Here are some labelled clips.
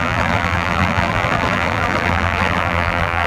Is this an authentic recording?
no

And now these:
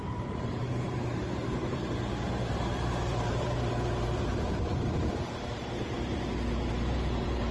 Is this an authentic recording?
no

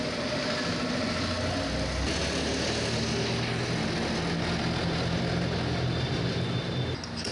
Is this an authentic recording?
yes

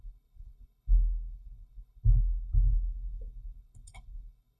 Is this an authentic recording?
no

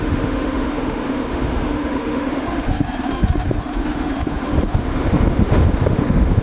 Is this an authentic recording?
no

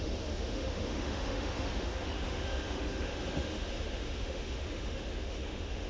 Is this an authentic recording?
no